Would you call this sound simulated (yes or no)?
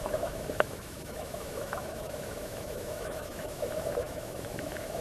yes